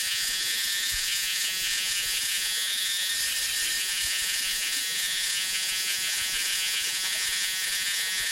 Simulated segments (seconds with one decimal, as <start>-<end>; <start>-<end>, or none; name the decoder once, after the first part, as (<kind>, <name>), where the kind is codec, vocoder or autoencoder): 0.0-3.1 (vocoder, Vocos); 3.8-8.3